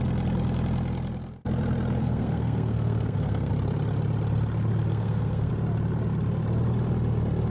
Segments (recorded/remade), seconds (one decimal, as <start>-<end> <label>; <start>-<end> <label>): 0.0-2.0 recorded; 2.0-3.5 remade; 3.5-4.9 recorded; 4.9-5.5 remade; 5.5-7.5 recorded